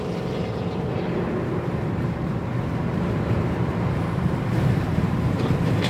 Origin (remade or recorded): remade